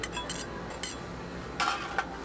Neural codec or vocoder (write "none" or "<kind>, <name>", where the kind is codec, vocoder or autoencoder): none